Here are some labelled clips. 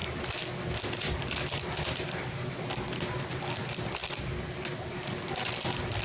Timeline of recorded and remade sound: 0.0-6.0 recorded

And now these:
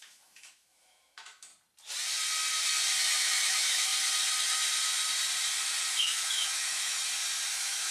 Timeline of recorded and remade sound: 0.0-1.5 remade; 1.5-3.2 recorded; 3.2-3.9 remade; 3.9-5.9 recorded; 5.9-7.0 remade; 7.0-7.5 recorded; 7.5-7.9 remade

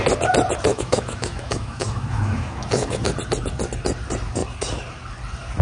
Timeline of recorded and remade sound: 0.0-0.7 recorded; 0.7-3.1 remade; 3.1-5.6 recorded

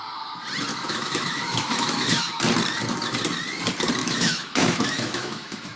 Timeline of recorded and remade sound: 0.0-0.7 recorded; 0.7-2.4 remade; 2.4-4.0 recorded; 4.0-5.8 remade

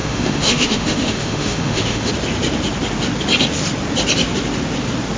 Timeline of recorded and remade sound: 0.0-2.1 remade; 2.1-5.2 recorded

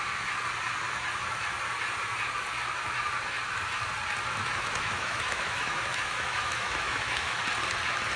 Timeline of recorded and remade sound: 0.0-4.4 recorded; 4.4-7.4 remade; 7.4-8.2 recorded